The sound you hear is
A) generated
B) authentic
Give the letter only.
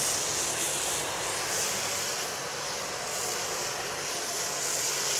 B